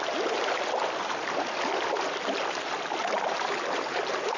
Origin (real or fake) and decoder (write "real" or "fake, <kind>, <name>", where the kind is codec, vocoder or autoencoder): real